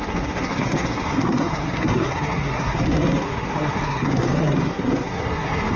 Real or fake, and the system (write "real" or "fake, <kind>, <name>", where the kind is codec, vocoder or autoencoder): fake, codec, SNAC